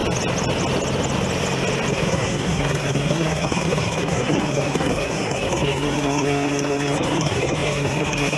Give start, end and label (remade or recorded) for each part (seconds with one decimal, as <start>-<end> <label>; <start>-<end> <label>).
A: 0.0-1.9 recorded; 1.9-8.4 remade